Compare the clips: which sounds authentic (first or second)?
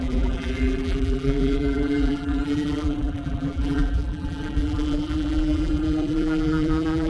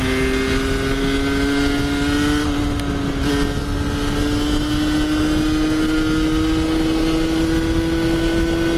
second